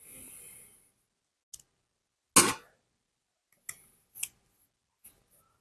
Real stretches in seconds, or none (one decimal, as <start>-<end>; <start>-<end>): 0.0-5.6